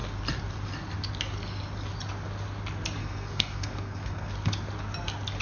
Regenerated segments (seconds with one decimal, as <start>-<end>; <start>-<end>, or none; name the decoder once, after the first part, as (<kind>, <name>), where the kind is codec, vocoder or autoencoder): 3.0-4.3 (codec, SNAC)